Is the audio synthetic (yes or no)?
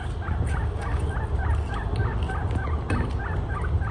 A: no